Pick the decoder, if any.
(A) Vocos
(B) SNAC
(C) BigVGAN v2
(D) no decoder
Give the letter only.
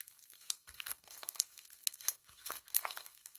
B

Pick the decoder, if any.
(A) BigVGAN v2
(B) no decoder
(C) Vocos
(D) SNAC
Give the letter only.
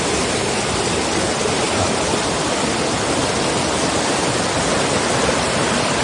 B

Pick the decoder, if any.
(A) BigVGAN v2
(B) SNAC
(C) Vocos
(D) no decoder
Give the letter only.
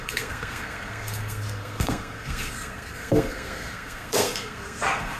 B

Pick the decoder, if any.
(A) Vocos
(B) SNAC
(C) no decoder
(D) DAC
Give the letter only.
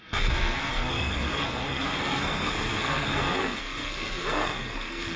B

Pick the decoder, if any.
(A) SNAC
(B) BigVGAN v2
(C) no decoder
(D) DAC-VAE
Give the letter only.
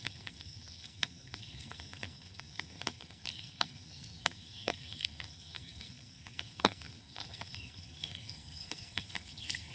A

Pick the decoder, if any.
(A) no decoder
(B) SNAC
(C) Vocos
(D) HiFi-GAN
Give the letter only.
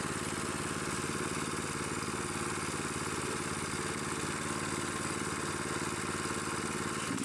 A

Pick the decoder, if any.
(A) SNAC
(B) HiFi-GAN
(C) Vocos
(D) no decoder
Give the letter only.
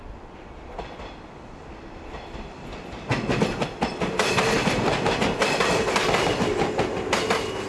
D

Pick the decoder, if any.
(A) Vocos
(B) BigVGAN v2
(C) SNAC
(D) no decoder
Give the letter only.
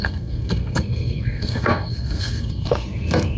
C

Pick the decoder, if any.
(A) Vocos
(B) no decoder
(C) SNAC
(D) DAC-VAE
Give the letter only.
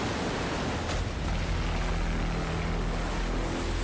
B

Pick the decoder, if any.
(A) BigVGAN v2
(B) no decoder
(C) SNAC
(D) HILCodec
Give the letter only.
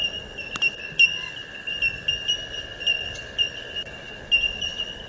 B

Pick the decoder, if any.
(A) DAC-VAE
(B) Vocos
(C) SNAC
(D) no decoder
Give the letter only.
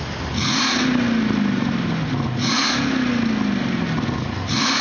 D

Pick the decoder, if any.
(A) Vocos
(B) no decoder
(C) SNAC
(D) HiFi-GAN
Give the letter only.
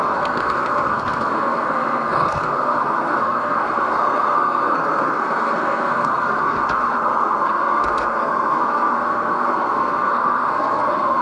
C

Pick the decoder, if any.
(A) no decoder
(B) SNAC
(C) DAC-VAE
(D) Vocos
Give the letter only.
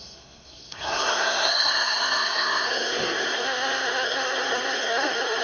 B